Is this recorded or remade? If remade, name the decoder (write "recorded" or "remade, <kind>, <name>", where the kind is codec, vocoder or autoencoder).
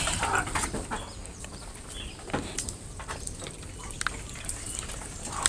recorded